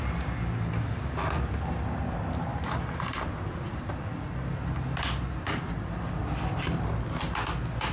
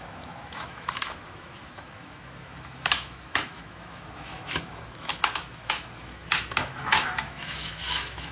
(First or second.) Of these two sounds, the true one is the first